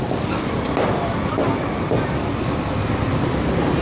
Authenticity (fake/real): real